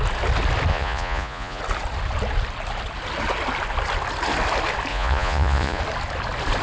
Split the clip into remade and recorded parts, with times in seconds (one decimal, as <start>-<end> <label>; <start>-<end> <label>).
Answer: 0.0-0.7 recorded; 0.7-1.6 remade; 1.6-4.9 recorded; 4.9-5.8 remade; 5.8-6.6 recorded